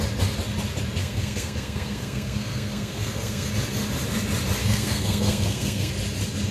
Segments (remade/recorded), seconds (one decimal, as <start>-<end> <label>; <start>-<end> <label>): 0.0-1.0 recorded; 1.0-3.5 remade; 3.5-4.6 recorded; 4.6-5.9 remade; 5.9-6.5 recorded